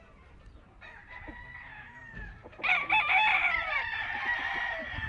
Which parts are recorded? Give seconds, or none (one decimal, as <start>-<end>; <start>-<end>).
0.0-5.1